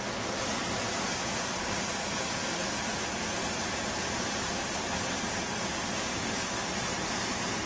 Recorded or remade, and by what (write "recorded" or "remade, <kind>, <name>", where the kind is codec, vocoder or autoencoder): recorded